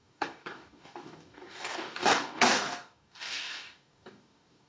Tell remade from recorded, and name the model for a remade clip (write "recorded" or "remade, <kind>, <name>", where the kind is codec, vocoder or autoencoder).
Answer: remade, codec, DAC